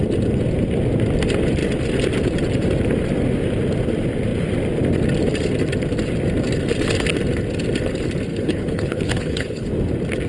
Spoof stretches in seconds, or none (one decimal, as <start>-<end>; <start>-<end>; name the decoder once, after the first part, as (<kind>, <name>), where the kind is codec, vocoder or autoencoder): 8.3-9.7 (codec, HILCodec)